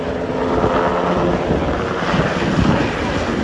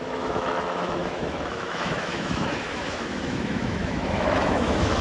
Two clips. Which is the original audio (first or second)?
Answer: first